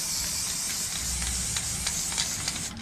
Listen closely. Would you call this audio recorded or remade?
recorded